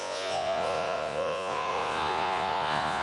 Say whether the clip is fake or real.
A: fake